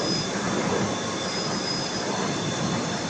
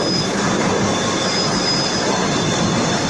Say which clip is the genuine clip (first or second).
second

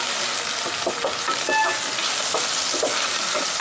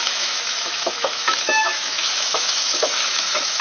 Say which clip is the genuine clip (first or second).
first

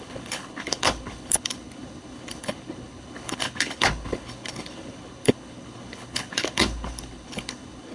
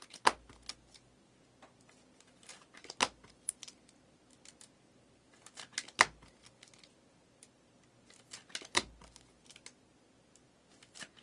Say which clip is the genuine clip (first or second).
second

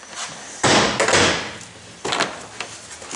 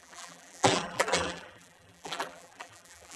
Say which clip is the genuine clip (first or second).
first